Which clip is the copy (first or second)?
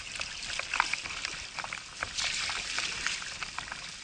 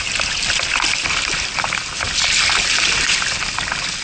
first